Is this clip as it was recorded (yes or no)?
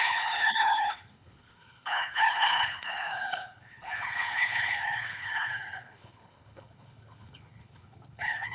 no